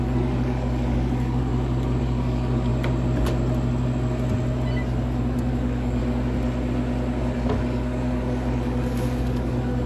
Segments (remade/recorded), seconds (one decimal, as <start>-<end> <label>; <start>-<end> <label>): 0.0-1.5 remade; 1.5-2.0 recorded; 2.0-2.7 remade; 2.7-5.5 recorded; 5.5-6.0 remade; 6.0-7.2 recorded; 7.2-9.9 remade